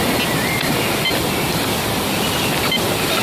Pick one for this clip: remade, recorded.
recorded